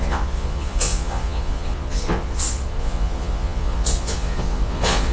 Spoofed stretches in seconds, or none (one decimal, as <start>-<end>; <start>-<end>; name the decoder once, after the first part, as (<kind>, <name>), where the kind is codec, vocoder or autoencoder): 0.0-5.1 (vocoder, Vocos)